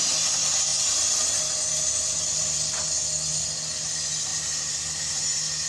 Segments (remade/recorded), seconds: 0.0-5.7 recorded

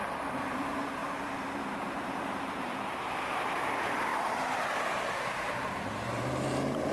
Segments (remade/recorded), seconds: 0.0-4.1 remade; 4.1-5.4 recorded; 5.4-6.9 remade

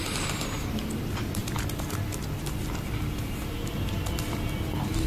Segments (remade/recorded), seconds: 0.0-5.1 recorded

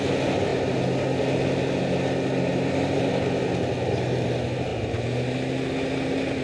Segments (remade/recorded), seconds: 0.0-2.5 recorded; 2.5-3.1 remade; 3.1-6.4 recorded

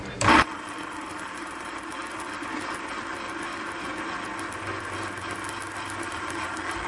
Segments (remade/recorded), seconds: 0.0-2.0 remade; 2.0-6.1 recorded; 6.1-6.9 remade

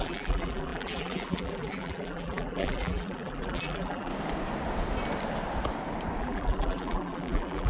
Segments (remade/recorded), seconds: 0.0-4.1 remade; 4.1-6.2 recorded; 6.2-7.7 remade

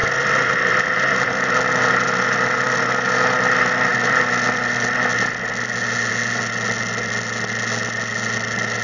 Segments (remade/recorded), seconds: 0.0-1.4 remade; 1.4-8.8 recorded